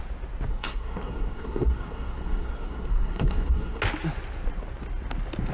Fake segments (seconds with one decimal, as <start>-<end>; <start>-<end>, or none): 0.5-3.8